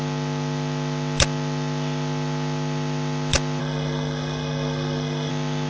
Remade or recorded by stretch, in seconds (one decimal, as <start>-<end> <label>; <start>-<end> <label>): 0.0-3.6 recorded; 3.6-5.3 remade; 5.3-5.7 recorded